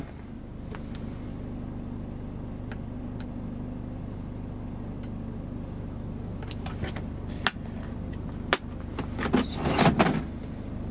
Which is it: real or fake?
real